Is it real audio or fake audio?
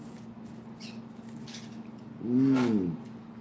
real